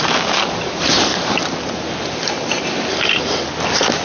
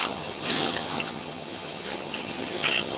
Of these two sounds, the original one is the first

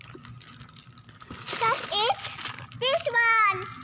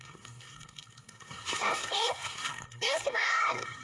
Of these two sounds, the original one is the first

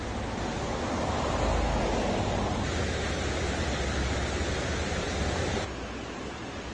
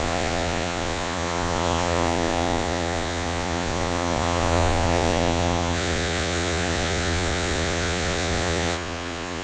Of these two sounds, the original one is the first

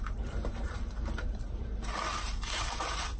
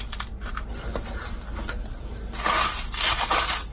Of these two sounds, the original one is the second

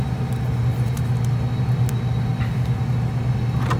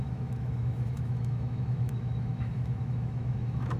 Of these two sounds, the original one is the first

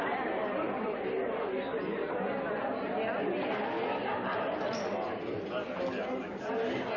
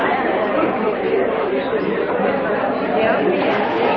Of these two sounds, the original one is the first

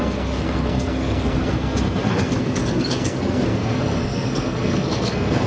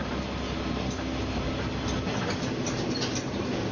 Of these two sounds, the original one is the second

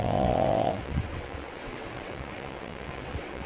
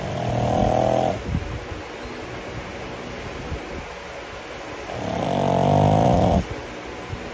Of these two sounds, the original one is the second